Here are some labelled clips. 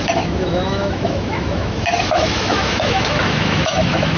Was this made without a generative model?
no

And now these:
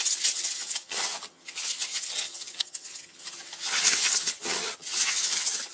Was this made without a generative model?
no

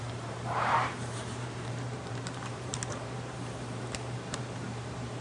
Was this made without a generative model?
no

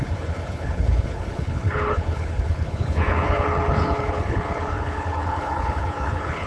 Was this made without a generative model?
no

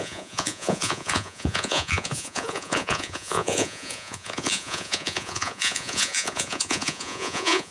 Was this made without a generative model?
no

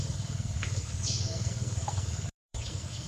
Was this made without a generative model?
no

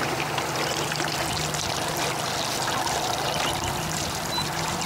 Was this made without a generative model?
yes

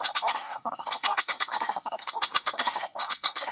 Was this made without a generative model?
no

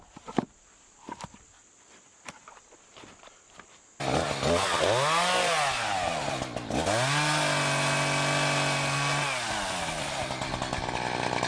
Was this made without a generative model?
yes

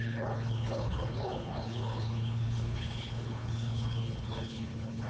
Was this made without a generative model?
no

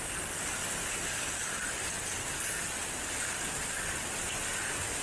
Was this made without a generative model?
yes